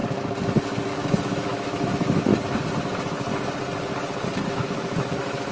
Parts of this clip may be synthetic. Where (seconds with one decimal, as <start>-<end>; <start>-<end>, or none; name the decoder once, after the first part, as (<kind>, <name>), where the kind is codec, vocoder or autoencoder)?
0.9-2.3 (autoencoder, DAC-VAE); 4.5-5.5